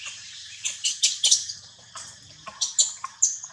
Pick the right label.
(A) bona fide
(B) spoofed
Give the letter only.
B